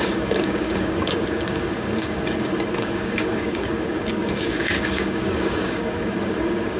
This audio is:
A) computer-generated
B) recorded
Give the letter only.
A